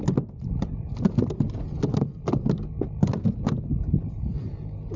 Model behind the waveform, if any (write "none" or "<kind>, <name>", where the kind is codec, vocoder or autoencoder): none